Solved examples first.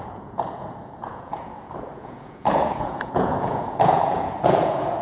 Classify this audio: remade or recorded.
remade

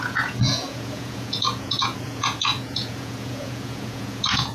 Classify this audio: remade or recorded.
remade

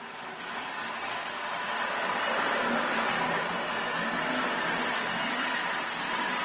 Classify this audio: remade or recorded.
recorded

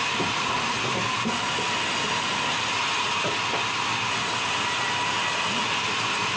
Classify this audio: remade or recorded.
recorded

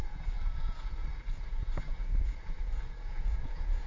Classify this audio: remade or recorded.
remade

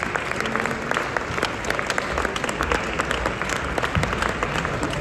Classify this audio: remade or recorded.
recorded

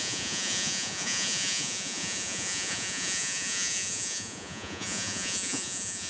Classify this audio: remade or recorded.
remade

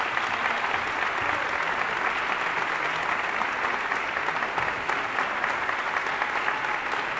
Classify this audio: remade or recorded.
recorded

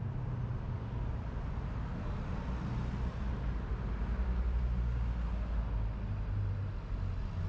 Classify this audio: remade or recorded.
recorded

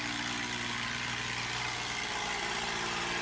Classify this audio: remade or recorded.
recorded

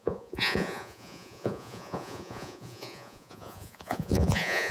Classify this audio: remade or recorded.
remade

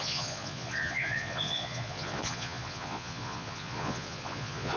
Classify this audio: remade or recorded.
remade